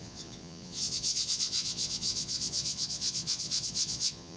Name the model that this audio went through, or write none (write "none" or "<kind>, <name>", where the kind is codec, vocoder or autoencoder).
vocoder, Vocos